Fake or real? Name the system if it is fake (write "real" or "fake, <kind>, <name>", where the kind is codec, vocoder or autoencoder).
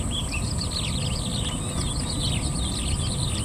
real